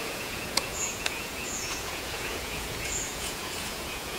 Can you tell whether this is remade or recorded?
remade